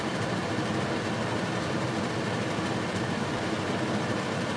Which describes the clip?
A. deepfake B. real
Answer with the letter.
A